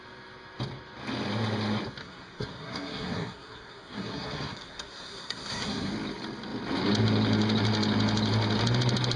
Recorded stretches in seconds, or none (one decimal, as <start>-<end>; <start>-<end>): 0.0-2.0; 5.9-9.2